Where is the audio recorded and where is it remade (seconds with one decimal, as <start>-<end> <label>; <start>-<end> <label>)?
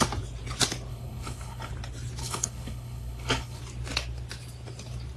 0.0-0.9 recorded; 0.9-1.7 remade; 1.7-2.2 recorded; 2.2-3.6 remade; 3.6-5.2 recorded